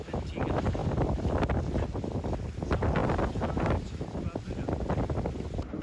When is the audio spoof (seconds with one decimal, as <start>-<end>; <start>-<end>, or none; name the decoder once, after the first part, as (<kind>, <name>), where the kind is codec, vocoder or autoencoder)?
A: none